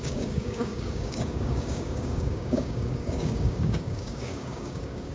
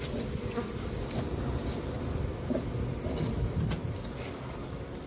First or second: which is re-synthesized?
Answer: first